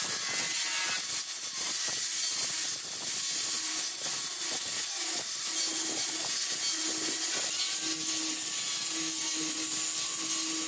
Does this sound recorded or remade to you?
recorded